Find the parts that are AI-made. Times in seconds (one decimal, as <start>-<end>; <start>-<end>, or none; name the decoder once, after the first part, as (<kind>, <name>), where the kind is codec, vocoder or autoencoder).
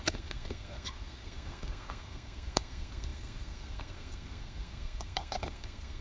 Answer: 0.0-6.0 (codec, SNAC)